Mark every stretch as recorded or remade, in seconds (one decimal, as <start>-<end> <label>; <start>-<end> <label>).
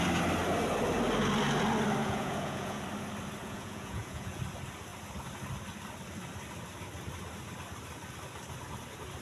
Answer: 0.0-2.0 recorded; 2.0-2.8 remade; 2.8-3.4 recorded; 3.4-4.4 remade; 4.4-9.2 recorded